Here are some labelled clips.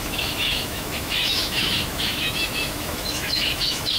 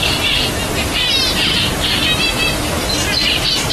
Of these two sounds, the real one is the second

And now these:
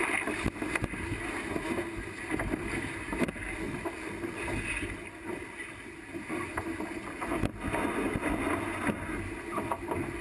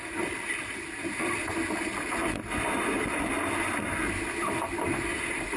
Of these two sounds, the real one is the first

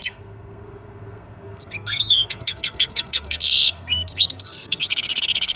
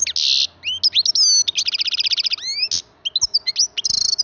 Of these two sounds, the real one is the second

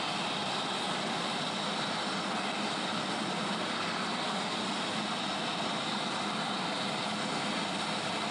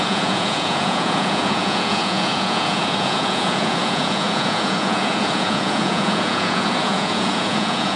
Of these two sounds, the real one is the first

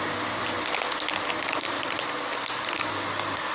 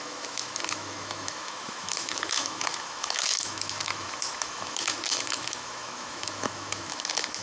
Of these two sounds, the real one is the first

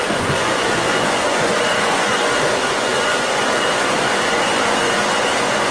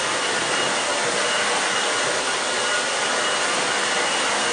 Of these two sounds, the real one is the second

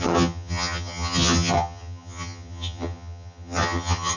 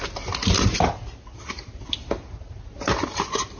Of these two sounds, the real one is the second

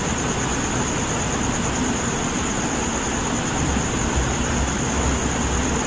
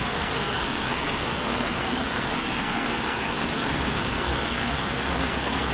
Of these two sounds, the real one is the first